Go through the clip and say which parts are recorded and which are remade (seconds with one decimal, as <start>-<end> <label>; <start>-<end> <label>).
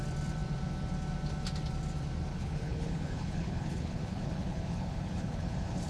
0.0-2.3 recorded; 2.3-5.9 remade